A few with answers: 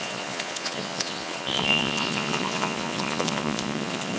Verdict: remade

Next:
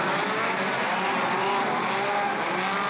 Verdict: recorded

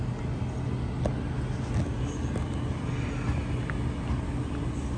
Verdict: recorded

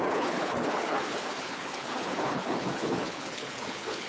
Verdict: remade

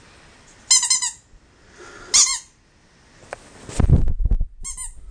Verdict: recorded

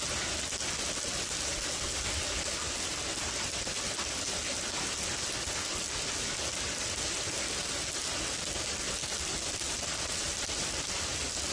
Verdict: recorded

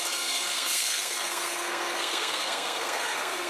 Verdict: remade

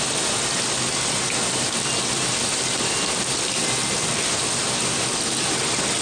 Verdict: recorded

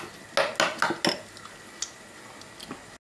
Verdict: recorded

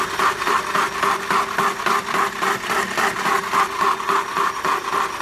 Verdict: recorded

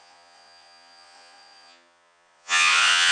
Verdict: remade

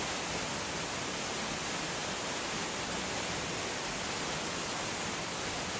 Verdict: recorded